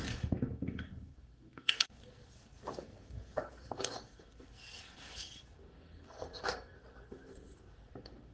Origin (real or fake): fake